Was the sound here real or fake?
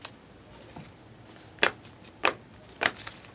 real